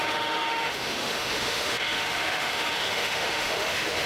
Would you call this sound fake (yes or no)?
yes